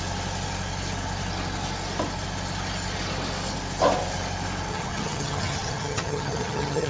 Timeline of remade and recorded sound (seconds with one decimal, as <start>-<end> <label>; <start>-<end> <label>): 0.0-4.7 recorded; 4.7-6.9 remade